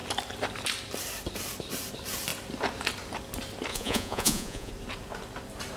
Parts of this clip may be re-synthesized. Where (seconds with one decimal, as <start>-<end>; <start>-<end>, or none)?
3.7-4.7

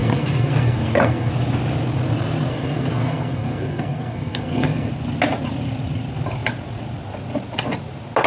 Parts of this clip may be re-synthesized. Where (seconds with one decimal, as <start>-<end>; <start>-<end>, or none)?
0.0-1.3; 2.5-4.9

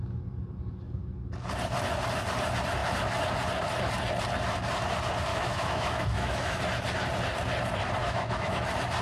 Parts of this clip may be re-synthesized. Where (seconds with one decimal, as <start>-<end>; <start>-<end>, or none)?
5.3-6.6; 8.0-8.6

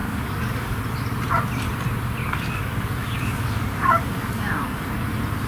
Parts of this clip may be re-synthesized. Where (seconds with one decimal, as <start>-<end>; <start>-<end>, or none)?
0.0-0.8; 2.2-5.1

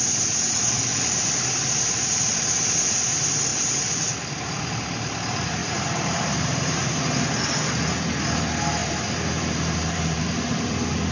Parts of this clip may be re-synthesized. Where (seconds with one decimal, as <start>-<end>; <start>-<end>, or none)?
5.6-7.0; 8.8-10.3

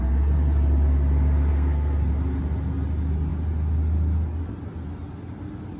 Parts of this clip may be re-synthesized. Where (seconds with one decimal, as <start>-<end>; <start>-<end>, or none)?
1.5-2.1